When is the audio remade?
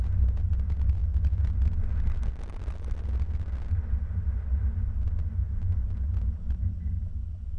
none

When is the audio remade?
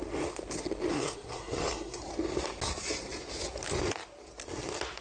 0.9-2.0 (codec, SNAC)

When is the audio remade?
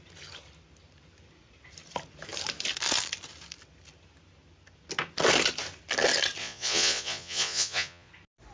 6.4-8.1 (vocoder, Vocos)